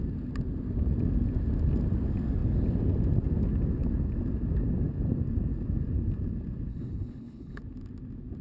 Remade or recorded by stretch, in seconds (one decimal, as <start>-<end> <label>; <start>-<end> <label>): 0.0-6.7 recorded; 6.7-7.6 remade; 7.6-8.4 recorded